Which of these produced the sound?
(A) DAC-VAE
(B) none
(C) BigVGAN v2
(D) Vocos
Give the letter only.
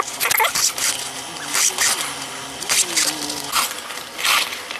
B